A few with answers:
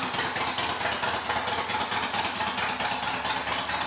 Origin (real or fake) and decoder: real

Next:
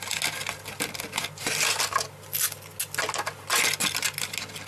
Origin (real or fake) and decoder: real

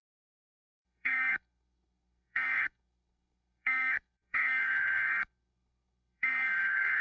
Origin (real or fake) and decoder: fake, codec, SNAC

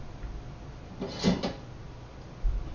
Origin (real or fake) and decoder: real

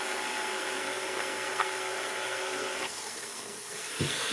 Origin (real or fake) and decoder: fake, codec, SNAC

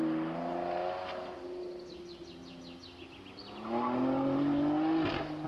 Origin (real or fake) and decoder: real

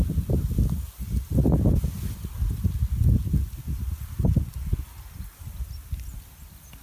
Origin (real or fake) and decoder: real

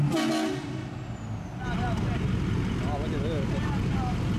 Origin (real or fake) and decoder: real